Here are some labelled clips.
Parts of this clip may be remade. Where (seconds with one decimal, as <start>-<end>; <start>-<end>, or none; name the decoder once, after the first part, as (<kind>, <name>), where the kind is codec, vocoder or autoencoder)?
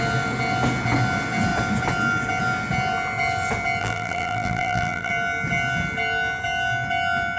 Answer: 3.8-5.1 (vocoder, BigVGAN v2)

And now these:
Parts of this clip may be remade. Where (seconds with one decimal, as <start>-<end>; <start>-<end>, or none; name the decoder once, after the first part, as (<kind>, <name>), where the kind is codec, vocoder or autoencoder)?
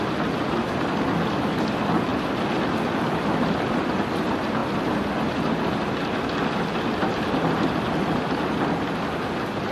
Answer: none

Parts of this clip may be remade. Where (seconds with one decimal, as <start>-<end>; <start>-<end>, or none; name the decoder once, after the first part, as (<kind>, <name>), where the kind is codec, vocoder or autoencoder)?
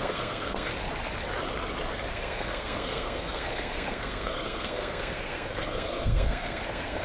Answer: 0.0-0.7 (codec, SNAC); 2.1-7.0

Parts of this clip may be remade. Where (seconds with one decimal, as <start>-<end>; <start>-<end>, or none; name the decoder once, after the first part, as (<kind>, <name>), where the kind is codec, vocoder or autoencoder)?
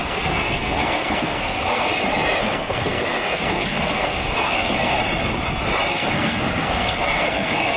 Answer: 0.0-1.9 (codec, SNAC); 2.4-5.0; 5.9-7.8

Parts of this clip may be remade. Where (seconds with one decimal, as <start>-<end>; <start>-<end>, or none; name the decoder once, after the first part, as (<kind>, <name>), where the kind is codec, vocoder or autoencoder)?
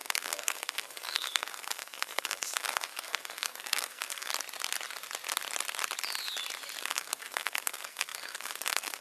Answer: 0.0-4.3 (codec, SNAC); 6.8-9.0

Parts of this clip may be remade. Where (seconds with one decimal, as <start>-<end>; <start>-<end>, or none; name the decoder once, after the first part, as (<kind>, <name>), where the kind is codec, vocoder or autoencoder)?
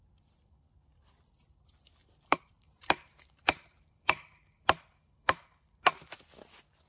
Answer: 2.0-5.8 (vocoder, BigVGAN v2)